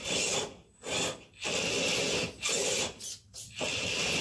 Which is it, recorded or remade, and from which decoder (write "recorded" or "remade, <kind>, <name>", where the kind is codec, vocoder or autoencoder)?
recorded